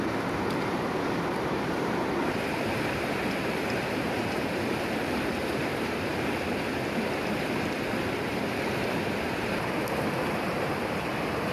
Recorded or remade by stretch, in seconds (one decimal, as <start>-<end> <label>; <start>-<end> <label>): 0.0-6.1 remade; 6.1-8.3 recorded; 8.3-11.5 remade